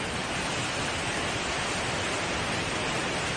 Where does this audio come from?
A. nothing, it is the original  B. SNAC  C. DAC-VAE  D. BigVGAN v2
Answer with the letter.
A